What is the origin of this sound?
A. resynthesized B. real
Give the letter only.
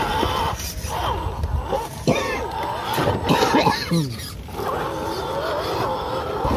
B